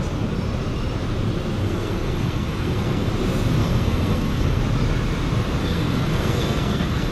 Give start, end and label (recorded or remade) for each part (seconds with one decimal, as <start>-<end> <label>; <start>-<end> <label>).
0.0-1.6 recorded; 1.6-3.1 remade; 3.1-3.6 recorded; 3.6-4.6 remade; 4.6-5.6 recorded; 5.6-7.1 remade